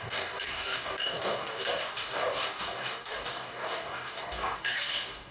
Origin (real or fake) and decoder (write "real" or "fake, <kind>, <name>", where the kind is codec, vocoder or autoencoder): fake, codec, DAC